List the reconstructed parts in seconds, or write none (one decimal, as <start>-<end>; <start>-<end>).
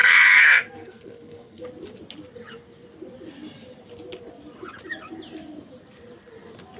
0.0-1.7